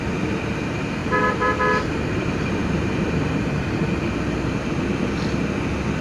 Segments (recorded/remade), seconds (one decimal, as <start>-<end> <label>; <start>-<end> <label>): 0.0-6.0 remade